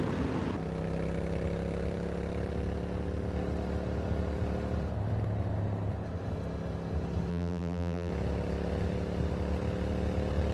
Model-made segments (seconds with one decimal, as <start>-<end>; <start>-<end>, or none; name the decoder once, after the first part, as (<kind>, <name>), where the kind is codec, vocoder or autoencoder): 7.3-8.1 (vocoder, BigVGAN v2)